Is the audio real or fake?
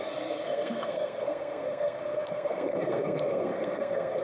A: fake